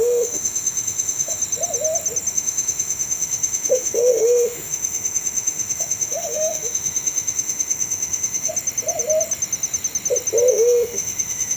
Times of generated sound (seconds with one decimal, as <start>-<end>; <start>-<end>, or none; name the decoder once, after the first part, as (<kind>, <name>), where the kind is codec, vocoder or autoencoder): 0.0-1.4 (autoencoder, DAC-VAE); 2.3-8.5; 10.5-11.6